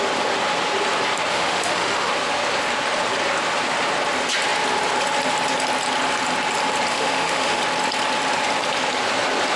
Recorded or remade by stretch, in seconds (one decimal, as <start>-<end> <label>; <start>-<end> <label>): 0.0-1.3 recorded; 1.3-2.1 remade; 2.1-6.9 recorded; 6.9-7.6 remade; 7.6-9.6 recorded